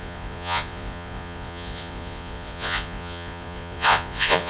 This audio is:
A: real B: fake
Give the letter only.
B